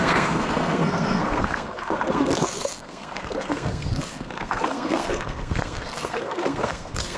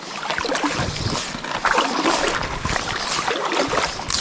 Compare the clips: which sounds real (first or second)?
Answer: second